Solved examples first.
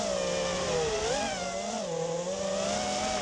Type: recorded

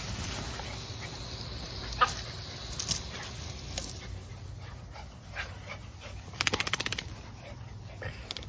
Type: recorded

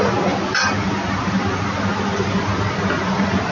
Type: recorded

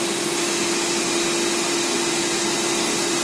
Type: recorded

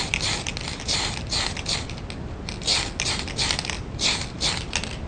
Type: recorded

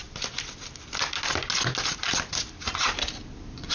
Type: recorded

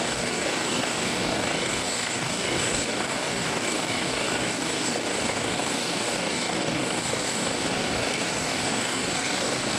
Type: remade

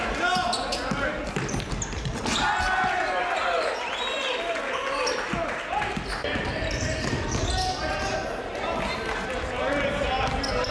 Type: recorded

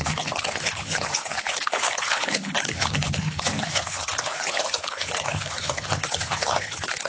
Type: remade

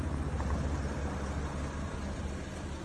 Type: recorded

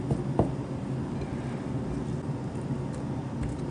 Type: recorded